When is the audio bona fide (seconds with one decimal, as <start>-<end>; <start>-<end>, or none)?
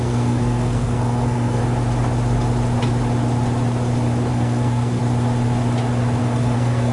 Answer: 1.6-4.3; 5.0-6.2